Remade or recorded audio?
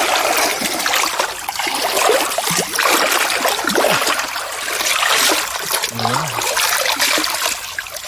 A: recorded